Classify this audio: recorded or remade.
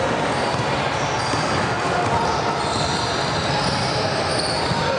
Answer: recorded